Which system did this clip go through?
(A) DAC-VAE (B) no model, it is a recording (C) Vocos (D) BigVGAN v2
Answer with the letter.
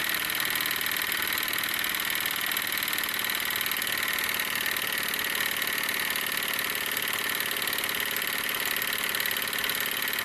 B